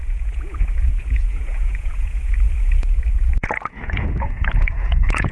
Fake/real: fake